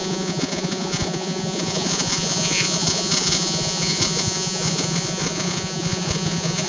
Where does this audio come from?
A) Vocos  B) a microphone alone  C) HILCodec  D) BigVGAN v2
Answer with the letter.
A